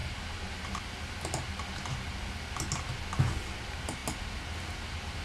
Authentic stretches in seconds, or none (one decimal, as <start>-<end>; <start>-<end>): 0.0-5.2